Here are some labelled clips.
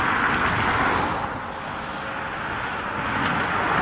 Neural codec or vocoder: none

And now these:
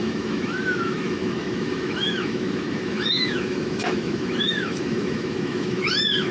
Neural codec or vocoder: autoencoder, DAC-VAE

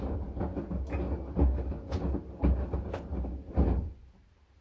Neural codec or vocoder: none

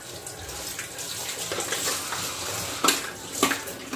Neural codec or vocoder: none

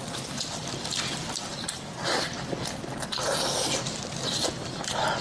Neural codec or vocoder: vocoder, BigVGAN v2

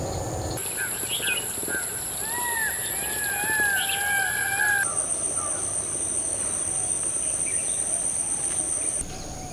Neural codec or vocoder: none